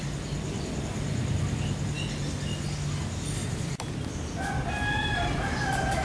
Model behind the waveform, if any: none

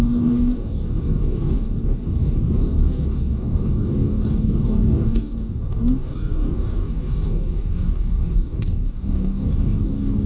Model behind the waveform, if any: codec, DAC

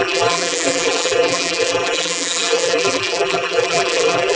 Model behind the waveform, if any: vocoder, BigVGAN v2